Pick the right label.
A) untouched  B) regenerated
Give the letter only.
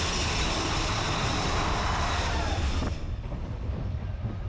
A